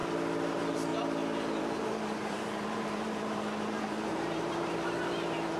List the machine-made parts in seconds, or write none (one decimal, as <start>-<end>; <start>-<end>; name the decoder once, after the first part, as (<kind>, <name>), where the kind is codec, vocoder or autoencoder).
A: 0.5-0.9 (vocoder, BigVGAN v2); 1.6-5.6